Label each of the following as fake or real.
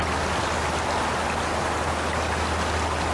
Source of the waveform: real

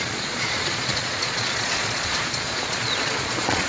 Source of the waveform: fake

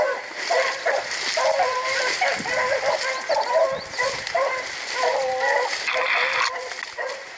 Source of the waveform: real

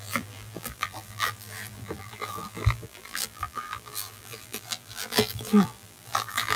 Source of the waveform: fake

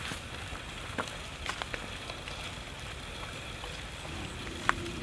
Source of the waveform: real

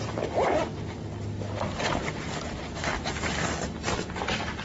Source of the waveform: real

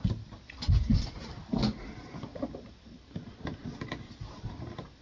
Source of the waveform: real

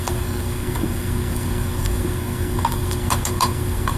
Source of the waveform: fake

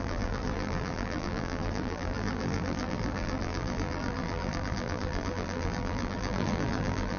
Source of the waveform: fake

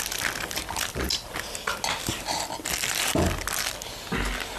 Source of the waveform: real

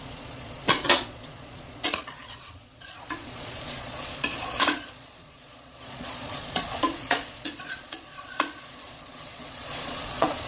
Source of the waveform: fake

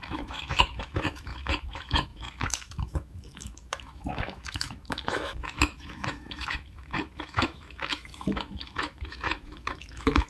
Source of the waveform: fake